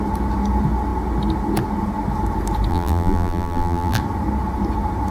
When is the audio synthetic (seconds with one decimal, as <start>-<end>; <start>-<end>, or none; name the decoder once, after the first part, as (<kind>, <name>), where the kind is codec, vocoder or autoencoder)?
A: 2.7-4.0 (vocoder, BigVGAN v2)